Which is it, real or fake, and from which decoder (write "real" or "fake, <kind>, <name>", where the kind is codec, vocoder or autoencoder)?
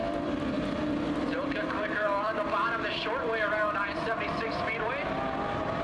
fake, vocoder, BigVGAN v2